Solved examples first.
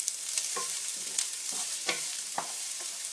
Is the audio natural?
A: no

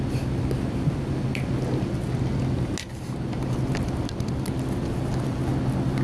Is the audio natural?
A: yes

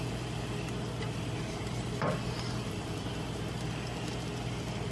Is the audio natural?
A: yes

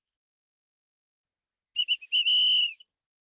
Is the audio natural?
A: yes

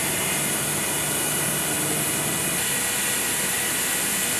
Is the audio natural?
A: yes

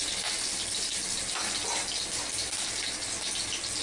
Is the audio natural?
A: yes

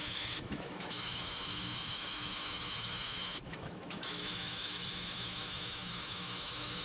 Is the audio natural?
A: no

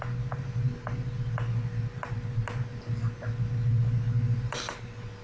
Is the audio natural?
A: yes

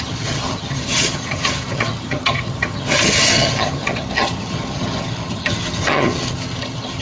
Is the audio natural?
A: no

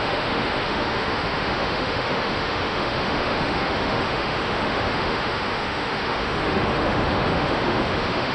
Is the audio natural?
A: no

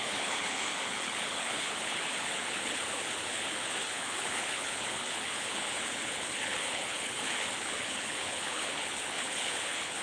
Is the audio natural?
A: no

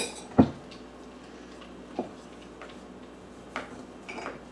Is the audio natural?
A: yes